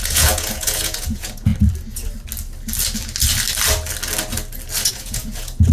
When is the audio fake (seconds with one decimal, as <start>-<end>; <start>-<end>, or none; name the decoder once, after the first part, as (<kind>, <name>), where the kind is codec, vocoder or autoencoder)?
0.0-1.5 (vocoder, Vocos); 4.9-5.7